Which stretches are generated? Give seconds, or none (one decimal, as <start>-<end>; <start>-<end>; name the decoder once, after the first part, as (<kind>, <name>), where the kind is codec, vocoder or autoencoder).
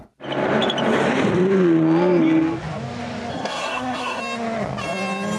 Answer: 3.3-4.2 (codec, SNAC)